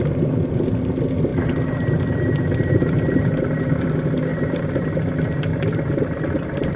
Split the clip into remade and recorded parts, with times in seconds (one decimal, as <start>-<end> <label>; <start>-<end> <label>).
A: 0.0-4.3 recorded; 4.3-4.9 remade; 4.9-5.5 recorded; 5.5-6.8 remade